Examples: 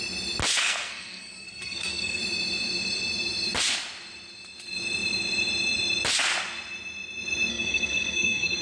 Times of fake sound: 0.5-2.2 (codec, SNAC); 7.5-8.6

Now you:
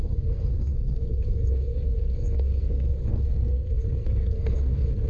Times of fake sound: 0.0-5.1 (codec, SNAC)

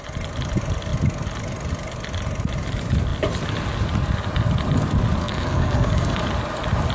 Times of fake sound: 5.2-6.2 (codec, SNAC)

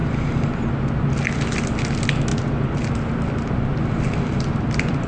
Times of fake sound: none

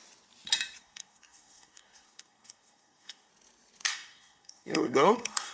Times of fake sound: 0.8-3.3 (codec, SNAC); 3.9-5.5